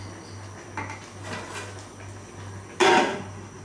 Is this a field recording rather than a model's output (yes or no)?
yes